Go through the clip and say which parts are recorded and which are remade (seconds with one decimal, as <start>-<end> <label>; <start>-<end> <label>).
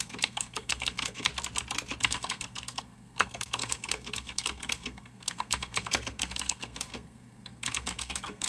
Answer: 0.0-1.3 remade; 1.3-2.0 recorded; 2.0-8.5 remade